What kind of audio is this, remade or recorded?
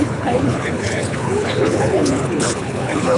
remade